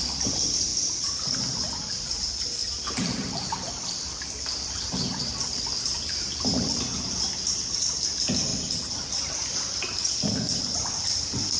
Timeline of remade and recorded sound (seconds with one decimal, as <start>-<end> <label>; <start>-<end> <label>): 0.0-11.6 remade